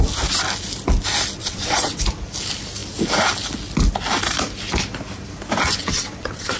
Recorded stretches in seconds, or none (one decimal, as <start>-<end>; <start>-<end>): 0.0-1.4; 2.0-5.8